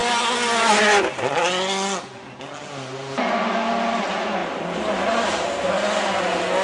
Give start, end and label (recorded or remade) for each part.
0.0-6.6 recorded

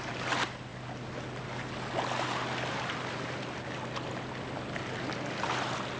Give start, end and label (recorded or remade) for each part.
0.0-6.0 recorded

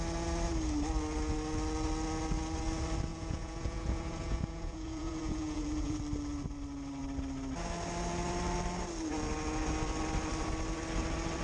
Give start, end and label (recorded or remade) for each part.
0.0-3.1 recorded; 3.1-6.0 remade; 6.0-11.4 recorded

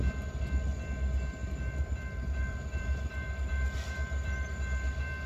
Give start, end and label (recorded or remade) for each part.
0.0-1.4 recorded; 1.4-4.6 remade; 4.6-5.3 recorded

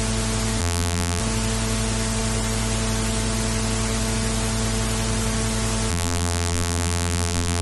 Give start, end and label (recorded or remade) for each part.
0.0-0.6 recorded; 0.6-1.2 remade; 1.2-5.9 recorded; 5.9-7.6 remade

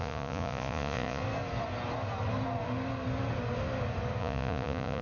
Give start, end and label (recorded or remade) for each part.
0.0-1.2 remade; 1.2-4.2 recorded; 4.2-5.0 remade